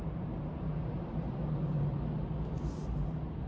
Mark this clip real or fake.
fake